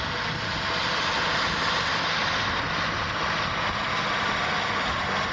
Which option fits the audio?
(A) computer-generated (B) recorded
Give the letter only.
B